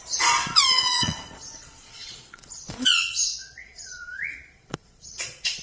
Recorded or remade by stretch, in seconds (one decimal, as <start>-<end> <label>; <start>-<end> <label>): 0.0-5.6 remade